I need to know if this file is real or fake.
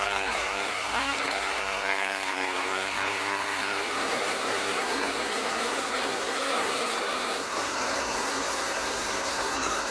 fake